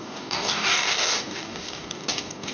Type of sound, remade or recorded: remade